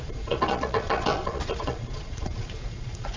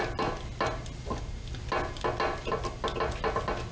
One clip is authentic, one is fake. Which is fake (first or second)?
first